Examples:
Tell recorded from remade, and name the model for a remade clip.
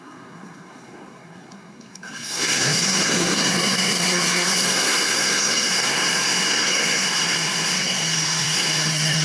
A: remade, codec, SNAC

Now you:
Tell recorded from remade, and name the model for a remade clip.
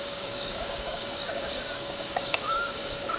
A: remade, codec, DAC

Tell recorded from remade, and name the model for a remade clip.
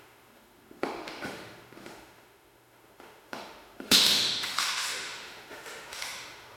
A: remade, autoencoder, DAC-VAE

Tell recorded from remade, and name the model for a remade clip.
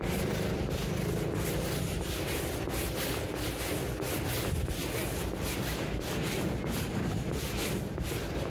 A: recorded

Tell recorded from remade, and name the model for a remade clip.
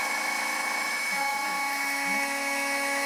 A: remade, autoencoder, DAC-VAE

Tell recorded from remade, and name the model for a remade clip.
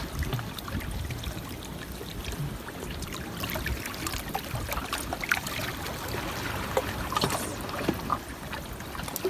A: recorded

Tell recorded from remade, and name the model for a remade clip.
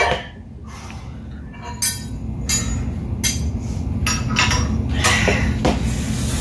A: recorded